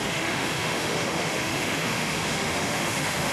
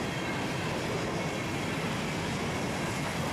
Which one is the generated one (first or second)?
first